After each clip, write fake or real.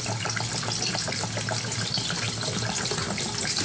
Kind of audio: real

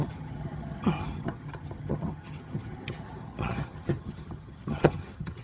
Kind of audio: fake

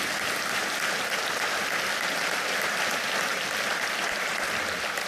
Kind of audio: real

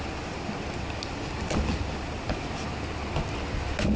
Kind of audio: real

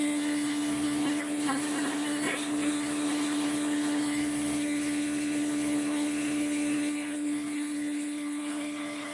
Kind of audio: fake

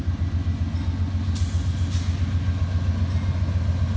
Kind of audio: real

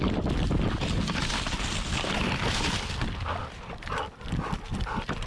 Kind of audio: real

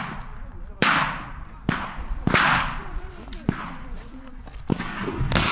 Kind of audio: fake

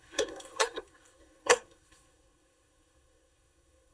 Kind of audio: fake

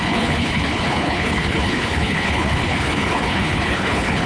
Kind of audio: fake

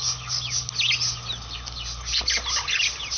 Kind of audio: real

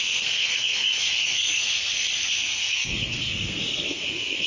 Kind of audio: fake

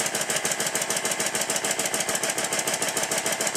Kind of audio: real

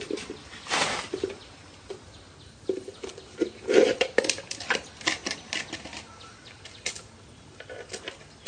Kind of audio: real